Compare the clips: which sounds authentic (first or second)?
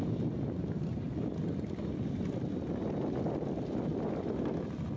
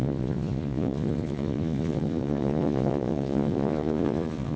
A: first